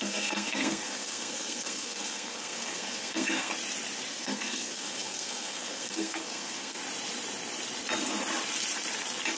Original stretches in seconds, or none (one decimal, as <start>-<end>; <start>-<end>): 3.5-4.1; 6.8-9.4